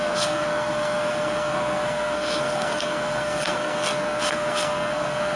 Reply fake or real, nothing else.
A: fake